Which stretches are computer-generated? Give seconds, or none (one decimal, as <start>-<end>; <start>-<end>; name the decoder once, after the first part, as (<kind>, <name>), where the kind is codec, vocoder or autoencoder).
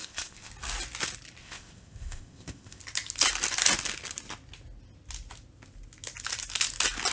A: 0.0-0.5 (codec, ZipCodec); 1.4-2.8